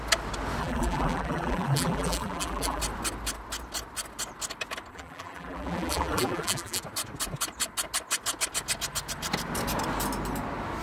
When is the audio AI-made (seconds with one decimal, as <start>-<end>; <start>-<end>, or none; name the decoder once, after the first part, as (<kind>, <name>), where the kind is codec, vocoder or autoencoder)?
0.6-2.8 (vocoder, BigVGAN v2); 4.9-6.8